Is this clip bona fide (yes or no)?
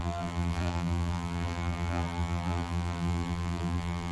no